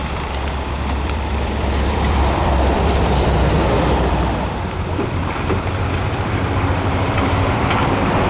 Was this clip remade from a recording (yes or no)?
yes